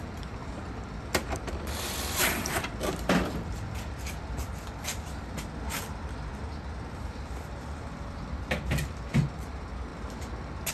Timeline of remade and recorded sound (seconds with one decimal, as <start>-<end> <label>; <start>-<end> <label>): 0.0-4.4 remade; 4.4-5.1 recorded; 5.1-9.9 remade; 9.9-10.7 recorded